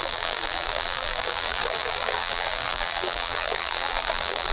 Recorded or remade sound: remade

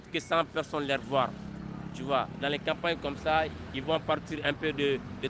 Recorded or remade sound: recorded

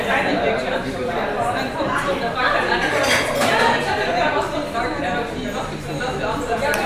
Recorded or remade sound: remade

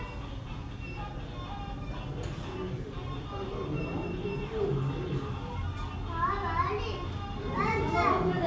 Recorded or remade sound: recorded